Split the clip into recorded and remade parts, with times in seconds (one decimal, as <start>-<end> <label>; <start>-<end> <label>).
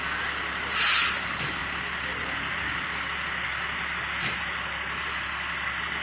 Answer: 0.0-6.0 recorded